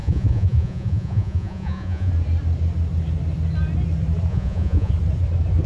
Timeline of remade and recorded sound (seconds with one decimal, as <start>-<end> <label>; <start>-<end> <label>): 0.0-2.1 remade; 2.1-4.3 recorded; 4.3-4.9 remade; 4.9-5.7 recorded